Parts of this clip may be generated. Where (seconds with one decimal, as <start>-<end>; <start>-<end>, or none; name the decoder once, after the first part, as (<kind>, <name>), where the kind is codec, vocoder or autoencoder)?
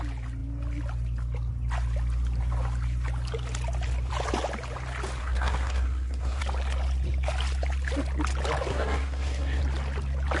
5.2-6.4 (codec, SNAC); 8.7-9.6